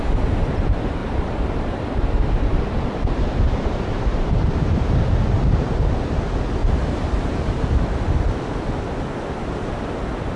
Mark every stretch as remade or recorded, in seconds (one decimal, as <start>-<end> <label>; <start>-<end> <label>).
0.0-1.0 recorded; 1.0-5.9 remade; 5.9-6.6 recorded; 6.6-7.7 remade; 7.7-10.4 recorded